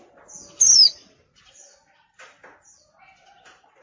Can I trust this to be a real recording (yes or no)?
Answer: yes